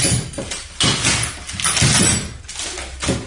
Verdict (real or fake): real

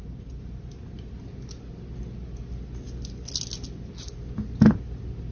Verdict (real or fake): real